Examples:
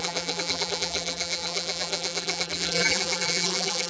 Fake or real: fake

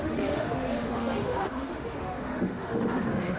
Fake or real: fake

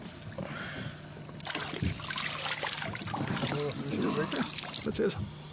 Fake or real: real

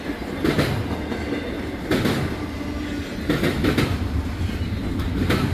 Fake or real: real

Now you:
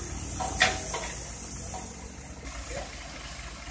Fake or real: real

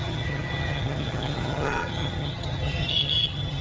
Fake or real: fake